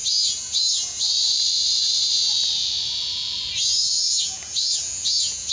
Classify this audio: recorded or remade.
remade